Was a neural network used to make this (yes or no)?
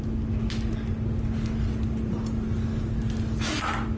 no